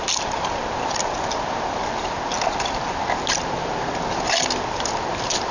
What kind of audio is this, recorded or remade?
recorded